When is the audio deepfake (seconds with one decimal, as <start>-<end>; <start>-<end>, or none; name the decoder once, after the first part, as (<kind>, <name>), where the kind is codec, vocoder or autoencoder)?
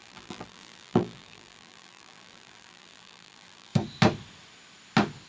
0.0-3.7 (vocoder, BigVGAN v2)